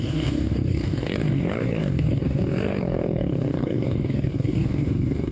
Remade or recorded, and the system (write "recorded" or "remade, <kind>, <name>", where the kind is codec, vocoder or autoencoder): remade, codec, DAC